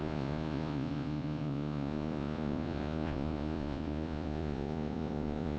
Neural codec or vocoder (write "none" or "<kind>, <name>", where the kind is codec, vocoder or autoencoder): vocoder, Vocos